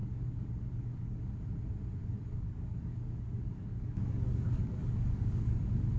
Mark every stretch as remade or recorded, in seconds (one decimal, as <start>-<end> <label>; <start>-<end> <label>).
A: 0.0-1.2 remade; 1.2-2.0 recorded; 2.0-5.6 remade; 5.6-6.0 recorded